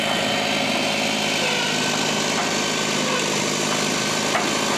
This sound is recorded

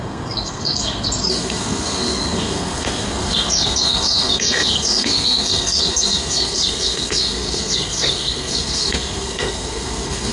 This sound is remade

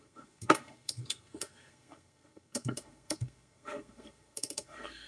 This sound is remade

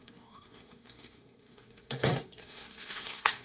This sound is remade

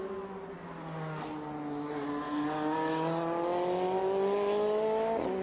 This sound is recorded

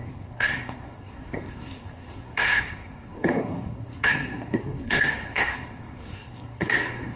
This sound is remade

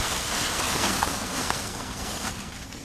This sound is remade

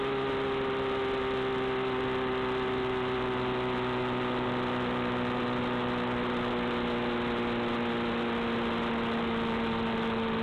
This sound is recorded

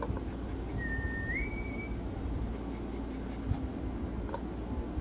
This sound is recorded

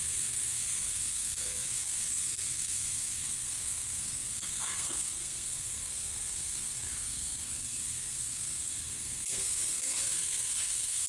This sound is remade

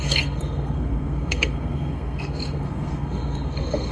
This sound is remade